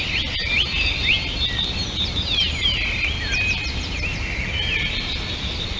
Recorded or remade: recorded